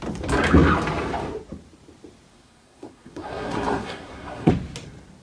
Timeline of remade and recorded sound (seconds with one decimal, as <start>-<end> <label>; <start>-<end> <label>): 0.0-2.3 recorded; 2.3-4.5 remade; 4.5-5.2 recorded